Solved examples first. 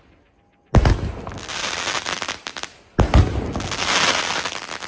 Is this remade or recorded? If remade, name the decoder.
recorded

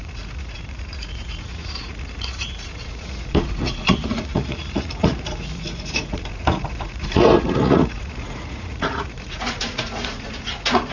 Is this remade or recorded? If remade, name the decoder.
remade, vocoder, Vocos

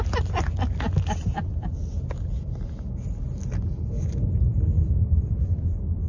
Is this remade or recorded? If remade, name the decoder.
recorded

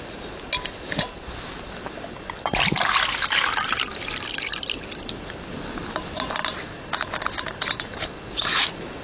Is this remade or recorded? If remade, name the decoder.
recorded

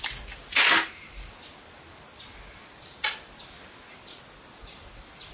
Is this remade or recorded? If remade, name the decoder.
recorded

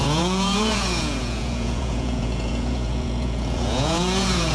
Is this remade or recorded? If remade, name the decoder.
remade, vocoder, Vocos